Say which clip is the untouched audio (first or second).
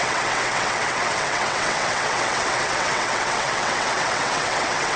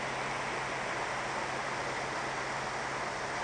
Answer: second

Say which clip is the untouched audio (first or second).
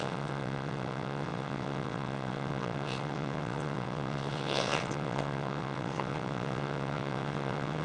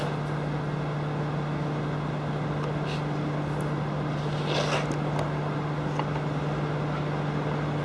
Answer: second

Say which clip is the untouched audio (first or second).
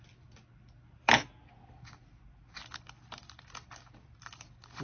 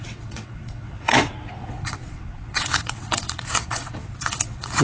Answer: first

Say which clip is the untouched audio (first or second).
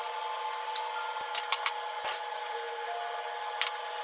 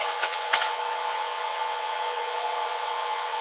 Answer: first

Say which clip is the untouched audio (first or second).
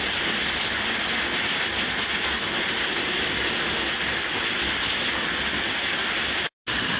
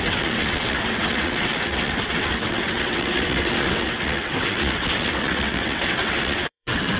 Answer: first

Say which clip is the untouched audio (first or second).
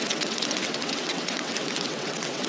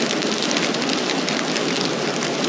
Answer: second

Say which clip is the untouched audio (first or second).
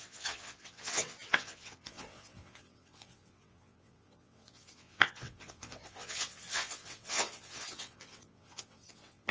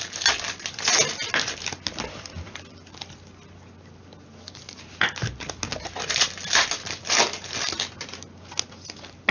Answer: second